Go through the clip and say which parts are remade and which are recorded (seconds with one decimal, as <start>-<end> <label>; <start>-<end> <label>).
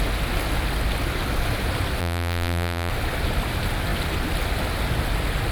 0.0-2.0 recorded; 2.0-2.9 remade; 2.9-5.5 recorded